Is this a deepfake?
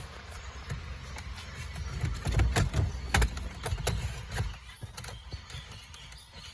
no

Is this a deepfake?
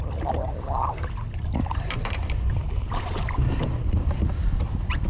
no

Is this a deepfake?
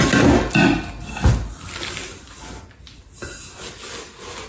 no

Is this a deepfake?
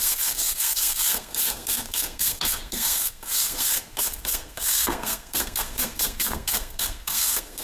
yes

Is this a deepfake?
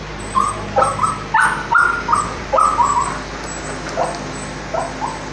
no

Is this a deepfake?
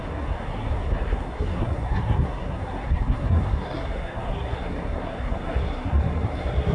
yes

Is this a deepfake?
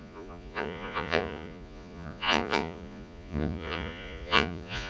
yes